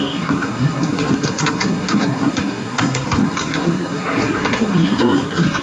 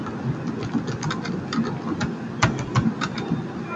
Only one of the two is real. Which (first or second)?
second